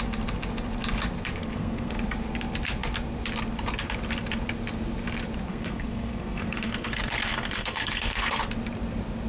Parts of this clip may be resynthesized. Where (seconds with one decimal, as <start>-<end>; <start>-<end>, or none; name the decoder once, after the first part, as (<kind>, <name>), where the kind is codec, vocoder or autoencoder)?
1.4-2.0 (codec, SNAC); 5.5-8.5